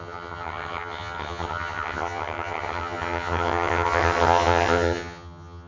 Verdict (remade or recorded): remade